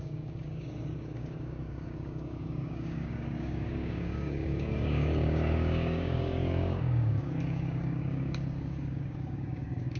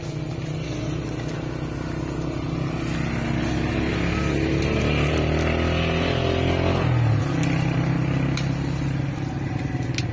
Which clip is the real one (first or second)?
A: second